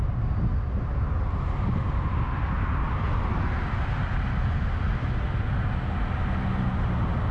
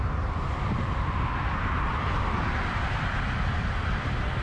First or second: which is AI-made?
second